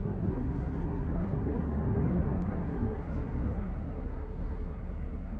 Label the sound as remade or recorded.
remade